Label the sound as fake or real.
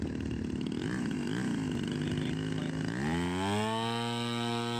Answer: real